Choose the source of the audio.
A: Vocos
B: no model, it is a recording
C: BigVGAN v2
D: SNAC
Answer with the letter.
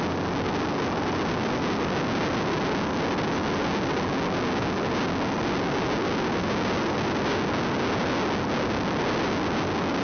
B